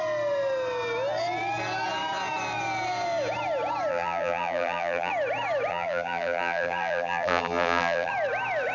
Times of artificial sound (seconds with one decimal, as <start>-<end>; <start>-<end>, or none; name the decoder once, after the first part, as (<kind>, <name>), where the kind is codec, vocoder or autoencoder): 3.9-5.1 (vocoder, BigVGAN v2); 5.7-8.1